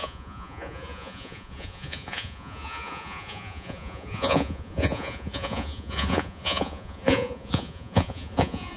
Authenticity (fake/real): fake